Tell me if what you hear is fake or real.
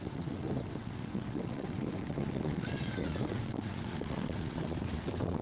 fake